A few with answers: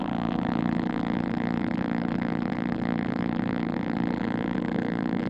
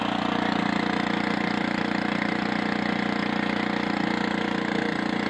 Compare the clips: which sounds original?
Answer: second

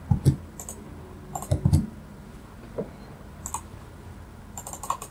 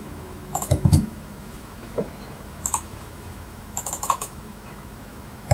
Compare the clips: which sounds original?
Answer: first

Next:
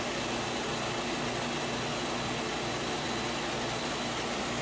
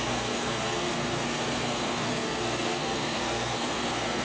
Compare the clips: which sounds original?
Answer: first